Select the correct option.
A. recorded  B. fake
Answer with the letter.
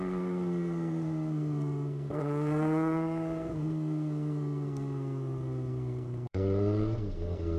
B